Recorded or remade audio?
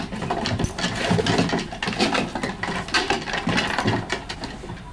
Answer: recorded